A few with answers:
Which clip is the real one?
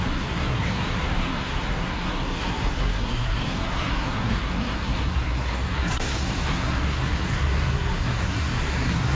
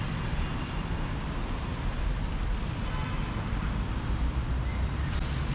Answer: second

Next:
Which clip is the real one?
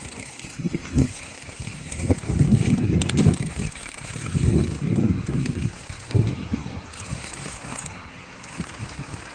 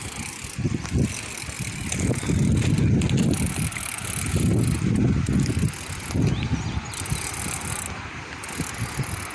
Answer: second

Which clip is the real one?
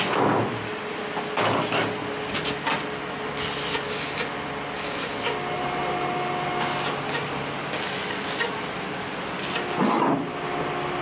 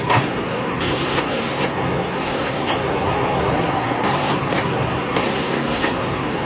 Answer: first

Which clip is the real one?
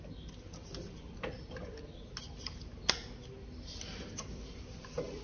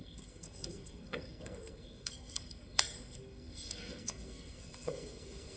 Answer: first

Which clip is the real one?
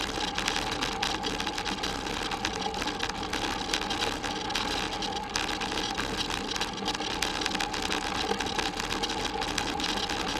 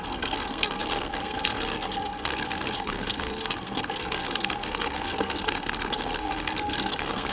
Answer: first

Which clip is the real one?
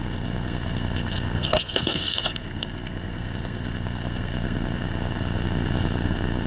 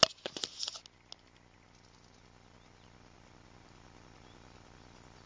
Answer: second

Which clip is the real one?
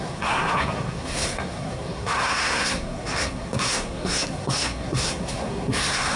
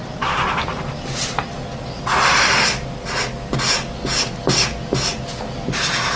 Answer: second